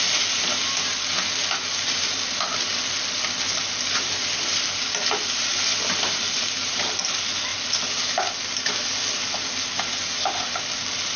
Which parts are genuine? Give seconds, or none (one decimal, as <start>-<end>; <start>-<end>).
0.0-11.2